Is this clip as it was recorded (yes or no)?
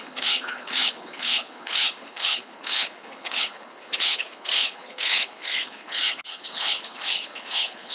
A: no